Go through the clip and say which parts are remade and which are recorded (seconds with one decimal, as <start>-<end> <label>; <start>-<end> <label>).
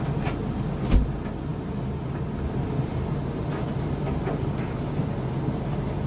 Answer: 0.0-6.1 recorded